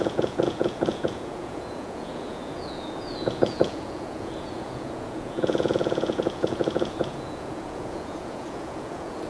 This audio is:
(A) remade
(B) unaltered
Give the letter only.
A